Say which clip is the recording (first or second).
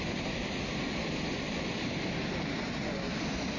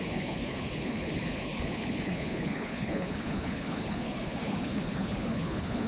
first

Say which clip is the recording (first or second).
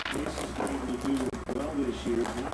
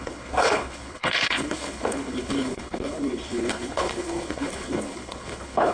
first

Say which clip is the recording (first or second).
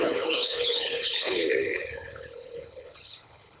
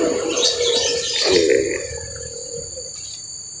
second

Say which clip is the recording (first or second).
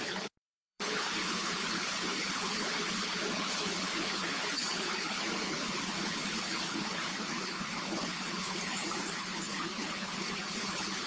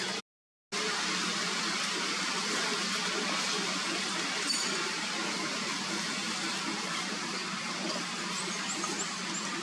second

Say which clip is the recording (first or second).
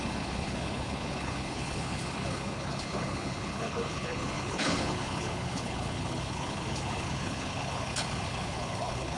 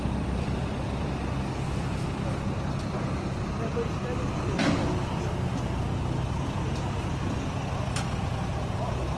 second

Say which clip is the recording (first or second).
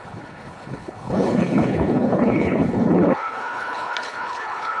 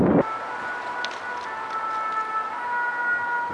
second